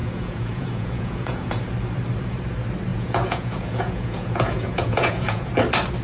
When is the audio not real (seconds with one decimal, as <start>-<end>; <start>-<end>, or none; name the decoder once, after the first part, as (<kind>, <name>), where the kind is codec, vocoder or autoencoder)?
0.0-1.6 (vocoder, Vocos); 2.9-5.5